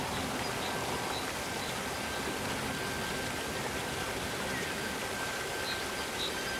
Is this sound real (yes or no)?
yes